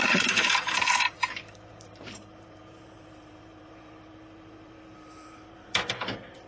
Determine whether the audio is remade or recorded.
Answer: remade